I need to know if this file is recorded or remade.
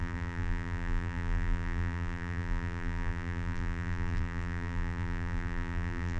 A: remade